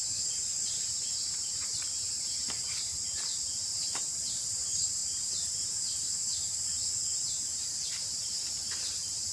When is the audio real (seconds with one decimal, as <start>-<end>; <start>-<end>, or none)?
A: 6.3-8.0